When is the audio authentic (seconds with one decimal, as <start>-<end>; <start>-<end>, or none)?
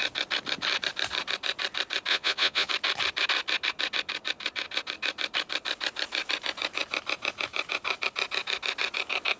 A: 0.0-2.1; 2.7-9.4